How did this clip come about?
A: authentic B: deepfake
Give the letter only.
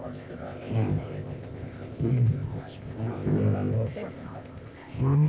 B